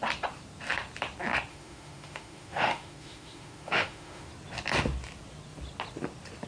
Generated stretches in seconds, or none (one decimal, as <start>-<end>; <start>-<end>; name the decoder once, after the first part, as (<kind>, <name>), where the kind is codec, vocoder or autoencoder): 1.5-4.3 (autoencoder, DAC-VAE)